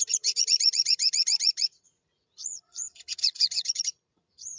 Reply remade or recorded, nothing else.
remade